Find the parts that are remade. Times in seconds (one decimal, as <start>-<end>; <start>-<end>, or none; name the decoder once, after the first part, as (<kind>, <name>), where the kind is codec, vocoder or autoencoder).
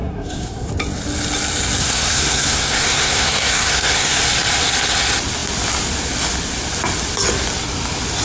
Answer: 0.0-0.7 (codec, SNAC); 1.8-4.2